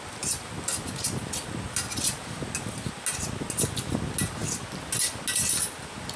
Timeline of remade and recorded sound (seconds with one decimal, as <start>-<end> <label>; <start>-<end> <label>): 0.0-6.2 recorded